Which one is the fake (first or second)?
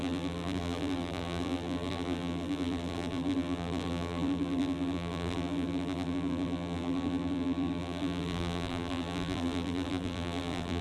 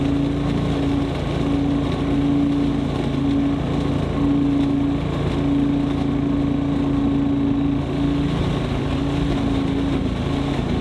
first